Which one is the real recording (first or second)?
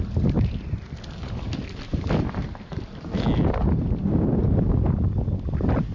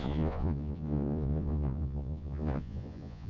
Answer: first